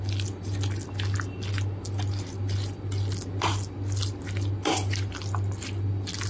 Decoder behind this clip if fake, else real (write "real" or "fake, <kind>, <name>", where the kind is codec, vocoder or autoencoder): real